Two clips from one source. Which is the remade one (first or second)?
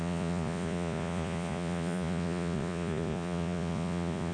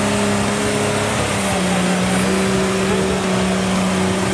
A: first